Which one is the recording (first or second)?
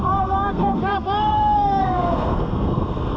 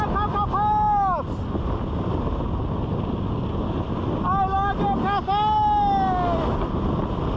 second